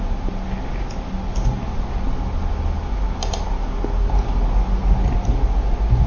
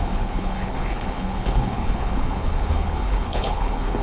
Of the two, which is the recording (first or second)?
first